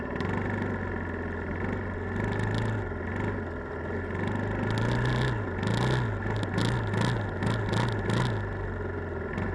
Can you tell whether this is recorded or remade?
recorded